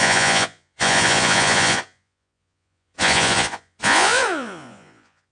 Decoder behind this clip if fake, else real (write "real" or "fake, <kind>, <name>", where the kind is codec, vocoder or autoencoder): fake, vocoder, Vocos